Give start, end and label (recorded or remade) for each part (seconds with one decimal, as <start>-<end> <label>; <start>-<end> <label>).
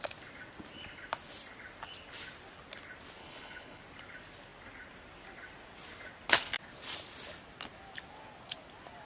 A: 0.0-3.2 recorded; 3.2-3.8 remade; 3.8-9.1 recorded